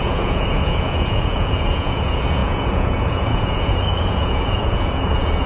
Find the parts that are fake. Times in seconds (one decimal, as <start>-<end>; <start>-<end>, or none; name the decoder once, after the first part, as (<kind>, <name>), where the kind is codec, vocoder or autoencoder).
0.0-5.5 (vocoder, Vocos)